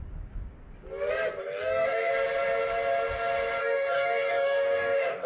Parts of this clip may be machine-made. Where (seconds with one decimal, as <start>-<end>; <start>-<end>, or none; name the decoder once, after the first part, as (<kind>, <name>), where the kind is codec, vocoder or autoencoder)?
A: 1.4-2.1 (codec, DAC); 3.6-5.3